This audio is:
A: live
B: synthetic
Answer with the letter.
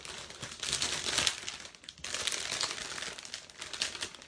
A